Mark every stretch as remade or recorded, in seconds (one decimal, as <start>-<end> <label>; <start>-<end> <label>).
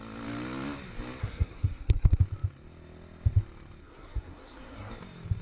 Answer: 0.0-1.2 recorded; 1.2-2.2 remade; 2.2-3.8 recorded; 3.8-4.9 remade; 4.9-5.4 recorded